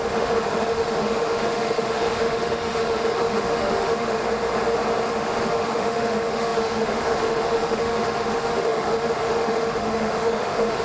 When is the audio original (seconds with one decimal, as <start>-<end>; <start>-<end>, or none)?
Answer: 4.2-5.1